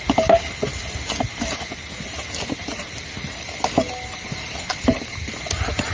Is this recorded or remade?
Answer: recorded